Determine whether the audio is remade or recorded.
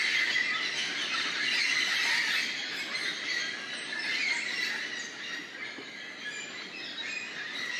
recorded